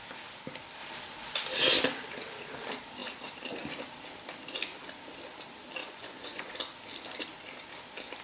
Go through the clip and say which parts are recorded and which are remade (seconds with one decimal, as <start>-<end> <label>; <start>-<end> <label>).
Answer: 0.0-5.8 recorded; 5.8-6.5 remade; 6.5-8.2 recorded